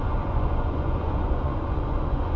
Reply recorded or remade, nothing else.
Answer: remade